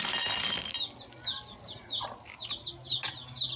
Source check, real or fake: real